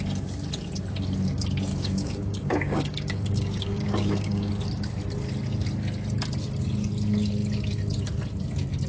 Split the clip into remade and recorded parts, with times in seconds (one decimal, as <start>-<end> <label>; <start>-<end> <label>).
0.0-1.7 recorded; 1.7-4.5 remade; 4.5-8.9 recorded